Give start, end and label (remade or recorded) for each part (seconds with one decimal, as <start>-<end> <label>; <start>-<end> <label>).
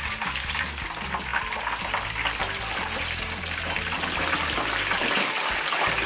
0.0-1.3 remade; 1.3-5.0 recorded; 5.0-6.1 remade